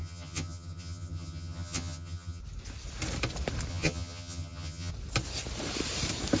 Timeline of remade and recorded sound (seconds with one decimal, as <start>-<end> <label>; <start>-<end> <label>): 0.0-2.4 remade; 2.4-3.7 recorded; 3.7-4.9 remade; 4.9-6.4 recorded